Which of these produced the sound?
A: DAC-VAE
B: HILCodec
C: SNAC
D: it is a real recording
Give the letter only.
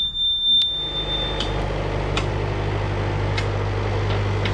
D